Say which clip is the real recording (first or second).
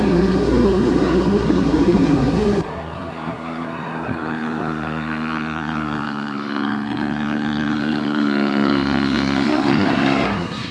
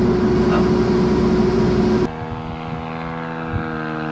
second